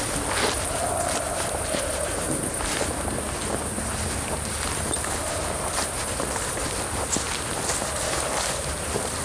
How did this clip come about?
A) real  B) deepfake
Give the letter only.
A